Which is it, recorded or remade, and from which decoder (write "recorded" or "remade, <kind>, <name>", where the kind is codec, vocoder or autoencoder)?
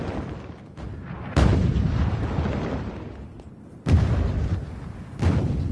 recorded